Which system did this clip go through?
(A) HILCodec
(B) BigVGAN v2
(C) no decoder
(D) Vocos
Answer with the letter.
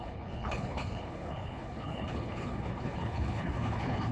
A